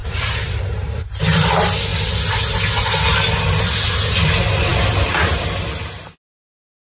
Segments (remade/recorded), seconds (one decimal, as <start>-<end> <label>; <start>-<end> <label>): 0.0-1.1 remade; 1.1-6.8 recorded